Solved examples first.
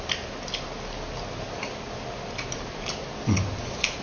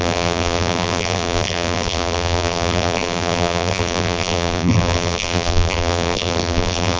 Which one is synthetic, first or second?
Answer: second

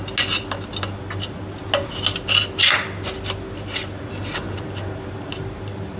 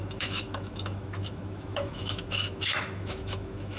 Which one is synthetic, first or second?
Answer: second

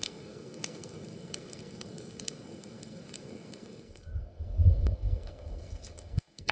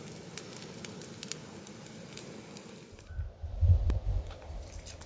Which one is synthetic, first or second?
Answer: first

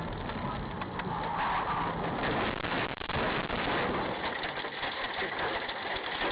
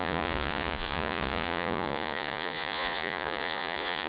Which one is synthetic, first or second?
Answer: second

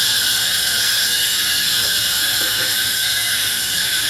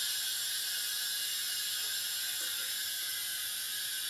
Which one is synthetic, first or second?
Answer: first